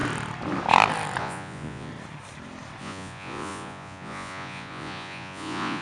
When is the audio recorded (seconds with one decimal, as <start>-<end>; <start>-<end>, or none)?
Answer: 0.0-1.2; 1.9-2.8